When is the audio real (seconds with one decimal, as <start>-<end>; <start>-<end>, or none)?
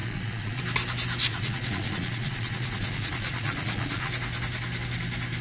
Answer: 0.6-1.3; 4.1-5.4